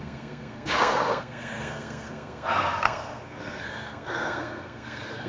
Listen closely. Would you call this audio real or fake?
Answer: fake